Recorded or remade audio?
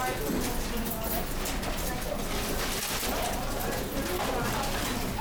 recorded